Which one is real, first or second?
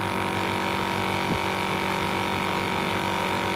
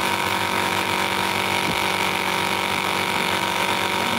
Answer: first